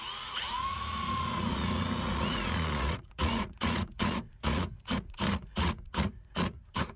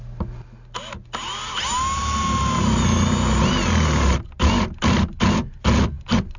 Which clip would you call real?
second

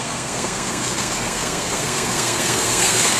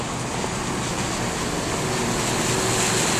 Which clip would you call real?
second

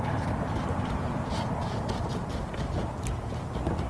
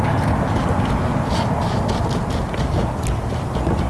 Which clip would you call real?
second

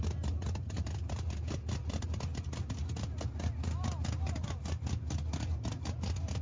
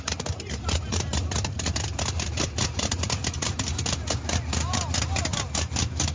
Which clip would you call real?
first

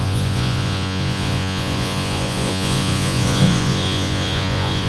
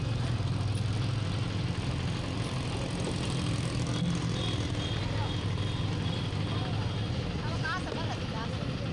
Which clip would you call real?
second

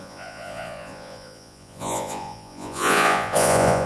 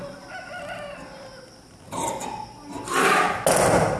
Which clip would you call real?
second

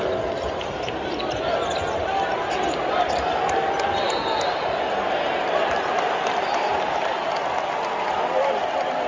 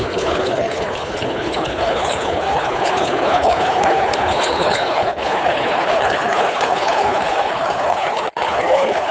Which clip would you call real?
first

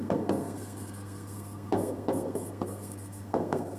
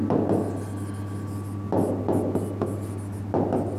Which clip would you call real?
second